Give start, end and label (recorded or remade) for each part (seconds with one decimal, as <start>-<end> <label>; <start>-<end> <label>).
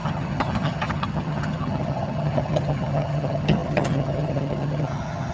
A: 0.0-5.3 remade